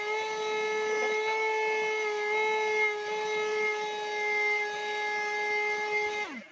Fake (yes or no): no